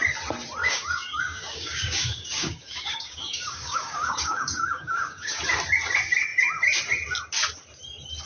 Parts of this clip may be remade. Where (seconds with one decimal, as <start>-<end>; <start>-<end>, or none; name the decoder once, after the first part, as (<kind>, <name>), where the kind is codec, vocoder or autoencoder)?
0.6-5.4 (codec, DAC)